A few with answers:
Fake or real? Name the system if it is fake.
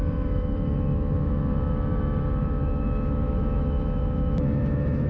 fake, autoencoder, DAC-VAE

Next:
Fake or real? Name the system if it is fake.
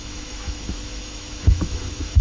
fake, autoencoder, DAC-VAE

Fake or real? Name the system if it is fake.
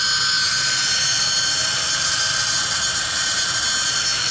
real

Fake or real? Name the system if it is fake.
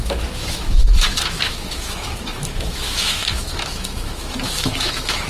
fake, autoencoder, DAC-VAE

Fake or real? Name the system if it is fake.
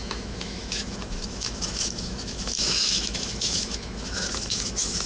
fake, autoencoder, DAC-VAE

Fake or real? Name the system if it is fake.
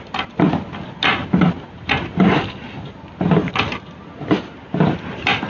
real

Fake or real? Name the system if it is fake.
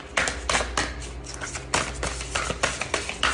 real